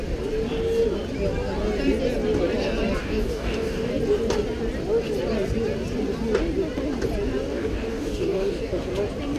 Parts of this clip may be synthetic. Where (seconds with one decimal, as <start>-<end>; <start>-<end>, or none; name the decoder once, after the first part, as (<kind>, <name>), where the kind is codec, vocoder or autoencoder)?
3.0-3.9 (codec, DAC); 7.5-8.9

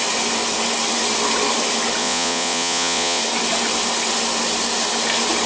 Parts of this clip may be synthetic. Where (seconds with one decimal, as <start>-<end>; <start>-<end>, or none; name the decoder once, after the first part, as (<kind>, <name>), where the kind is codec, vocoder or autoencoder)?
2.0-3.2 (vocoder, Vocos)

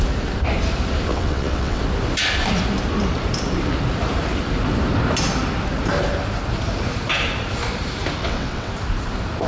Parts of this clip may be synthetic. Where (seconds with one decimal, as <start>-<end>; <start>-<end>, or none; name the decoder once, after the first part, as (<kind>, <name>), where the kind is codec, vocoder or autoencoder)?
1.1-1.8 (vocoder, WaveNeXt); 8.2-8.7

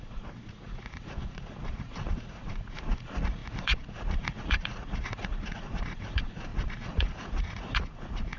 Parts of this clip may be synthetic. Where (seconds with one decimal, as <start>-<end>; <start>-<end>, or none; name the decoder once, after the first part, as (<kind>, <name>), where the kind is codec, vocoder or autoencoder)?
0.0-8.4 (vocoder, Vocos)

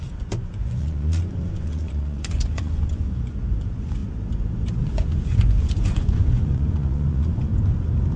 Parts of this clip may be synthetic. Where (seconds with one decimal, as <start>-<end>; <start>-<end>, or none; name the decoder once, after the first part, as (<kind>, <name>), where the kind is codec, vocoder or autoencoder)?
0.0-7.5 (vocoder, Vocos)

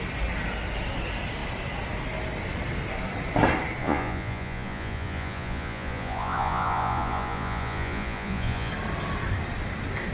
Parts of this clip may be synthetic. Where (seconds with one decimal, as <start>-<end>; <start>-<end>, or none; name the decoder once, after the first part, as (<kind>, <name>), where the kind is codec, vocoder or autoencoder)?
3.8-8.7 (vocoder, Vocos)

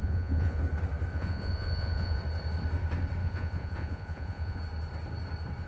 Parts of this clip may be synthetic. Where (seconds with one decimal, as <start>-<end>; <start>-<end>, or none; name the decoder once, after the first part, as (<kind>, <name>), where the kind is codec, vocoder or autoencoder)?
0.0-0.6 (vocoder, Vocos); 1.1-2.2; 3.2-4.6